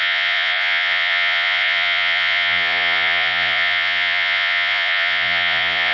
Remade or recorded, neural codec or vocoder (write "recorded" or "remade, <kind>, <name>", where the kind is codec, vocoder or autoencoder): remade, vocoder, Vocos